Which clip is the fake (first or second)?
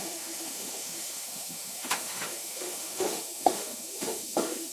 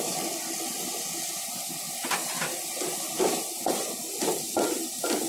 first